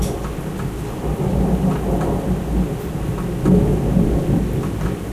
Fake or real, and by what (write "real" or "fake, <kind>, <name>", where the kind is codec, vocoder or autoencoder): real